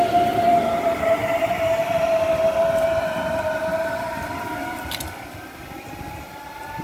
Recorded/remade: recorded